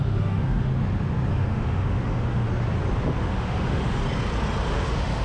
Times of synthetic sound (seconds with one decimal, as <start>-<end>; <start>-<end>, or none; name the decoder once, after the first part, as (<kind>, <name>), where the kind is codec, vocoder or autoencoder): 0.0-0.7 (autoencoder, DAC-VAE); 1.3-2.5; 3.2-4.0; 4.7-5.2